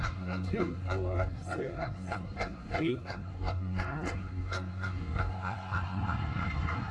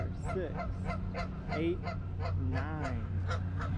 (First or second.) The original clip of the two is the second